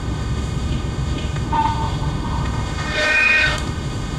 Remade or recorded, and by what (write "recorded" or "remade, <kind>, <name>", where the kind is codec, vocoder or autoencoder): remade, autoencoder, DAC-VAE